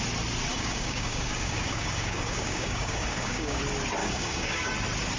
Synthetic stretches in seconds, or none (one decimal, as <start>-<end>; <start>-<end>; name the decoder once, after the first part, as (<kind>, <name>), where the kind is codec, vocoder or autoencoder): 0.5-3.6 (codec, DAC); 4.0-4.7